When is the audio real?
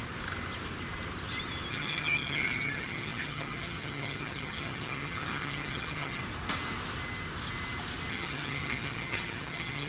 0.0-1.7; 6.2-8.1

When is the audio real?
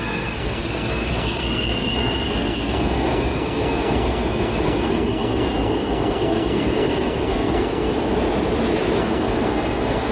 7.9-9.0